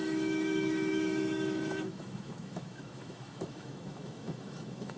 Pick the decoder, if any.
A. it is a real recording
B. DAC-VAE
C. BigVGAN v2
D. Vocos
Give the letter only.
B